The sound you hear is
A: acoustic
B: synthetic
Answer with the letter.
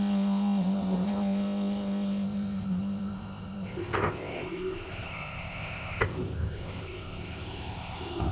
B